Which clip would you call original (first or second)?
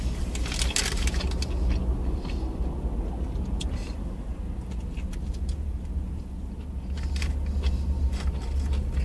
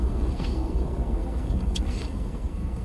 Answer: first